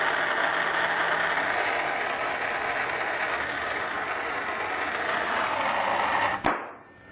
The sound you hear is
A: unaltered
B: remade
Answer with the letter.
A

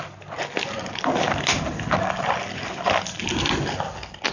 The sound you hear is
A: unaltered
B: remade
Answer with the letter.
A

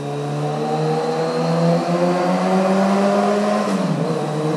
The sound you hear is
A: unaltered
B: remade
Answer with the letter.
A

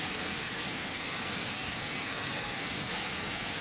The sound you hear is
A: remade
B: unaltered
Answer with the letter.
A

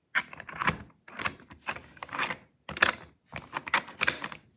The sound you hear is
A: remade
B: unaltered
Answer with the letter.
B